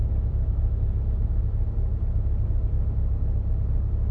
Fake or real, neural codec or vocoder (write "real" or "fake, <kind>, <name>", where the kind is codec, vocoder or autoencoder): real